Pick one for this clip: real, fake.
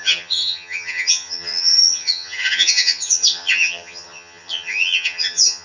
fake